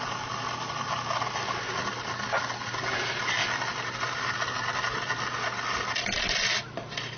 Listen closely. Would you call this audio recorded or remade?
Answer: recorded